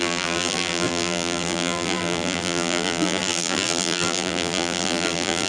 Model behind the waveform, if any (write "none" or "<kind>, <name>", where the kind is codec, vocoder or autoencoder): vocoder, BigVGAN v2